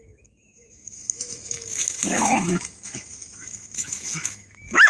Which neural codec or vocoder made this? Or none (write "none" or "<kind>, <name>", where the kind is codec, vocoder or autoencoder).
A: autoencoder, DAC-VAE